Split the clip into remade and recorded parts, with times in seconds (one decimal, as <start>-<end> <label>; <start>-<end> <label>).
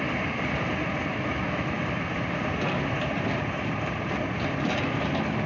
0.0-1.1 recorded; 1.1-1.8 remade; 1.8-5.5 recorded